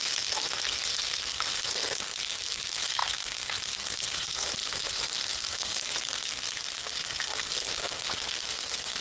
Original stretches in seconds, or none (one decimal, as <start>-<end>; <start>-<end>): none